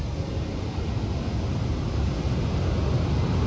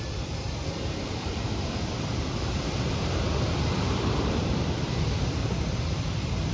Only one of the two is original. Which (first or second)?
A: first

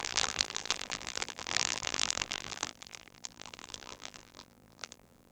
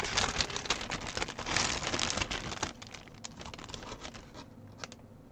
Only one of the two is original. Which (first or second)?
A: second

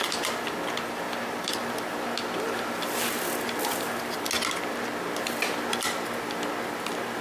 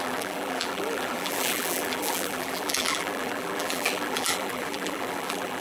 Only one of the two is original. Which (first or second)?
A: first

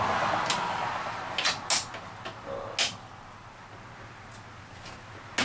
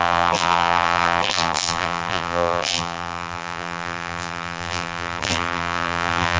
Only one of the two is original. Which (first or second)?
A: first